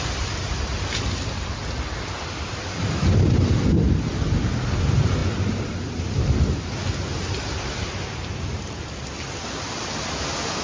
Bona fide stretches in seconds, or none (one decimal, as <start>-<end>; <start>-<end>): 0.0-10.6